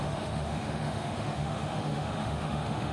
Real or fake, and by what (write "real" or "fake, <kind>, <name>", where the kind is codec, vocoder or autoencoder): fake, autoencoder, DAC-VAE